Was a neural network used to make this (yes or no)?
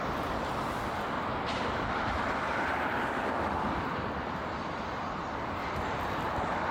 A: yes